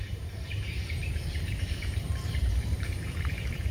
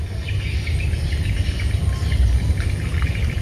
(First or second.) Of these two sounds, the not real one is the first